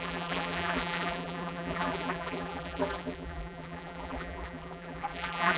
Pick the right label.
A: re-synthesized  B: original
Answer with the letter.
A